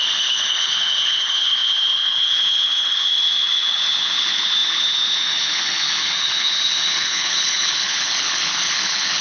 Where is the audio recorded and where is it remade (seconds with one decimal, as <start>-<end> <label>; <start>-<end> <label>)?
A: 0.0-9.2 remade